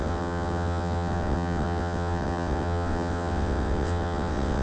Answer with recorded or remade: remade